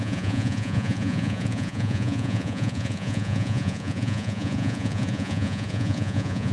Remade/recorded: remade